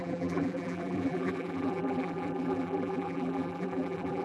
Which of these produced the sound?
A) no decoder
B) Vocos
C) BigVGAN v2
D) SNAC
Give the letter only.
C